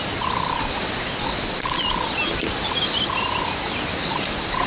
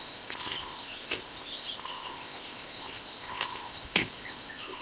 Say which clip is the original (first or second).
first